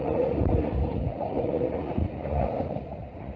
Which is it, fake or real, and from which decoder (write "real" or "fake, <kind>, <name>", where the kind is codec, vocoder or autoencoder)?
fake, vocoder, Vocos